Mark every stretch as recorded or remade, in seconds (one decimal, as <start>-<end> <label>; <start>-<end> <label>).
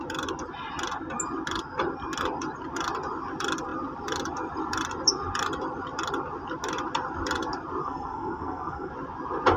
0.0-7.8 recorded; 7.8-8.9 remade; 8.9-9.6 recorded